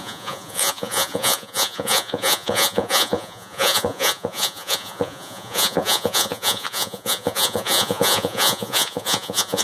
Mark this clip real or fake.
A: fake